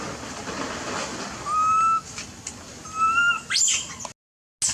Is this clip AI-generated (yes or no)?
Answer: no